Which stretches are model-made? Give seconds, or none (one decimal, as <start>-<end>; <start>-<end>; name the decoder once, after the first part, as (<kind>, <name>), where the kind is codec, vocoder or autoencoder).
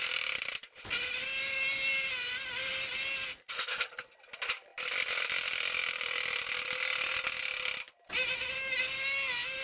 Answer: none